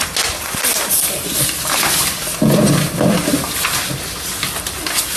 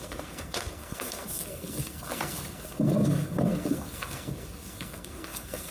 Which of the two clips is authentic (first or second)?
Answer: first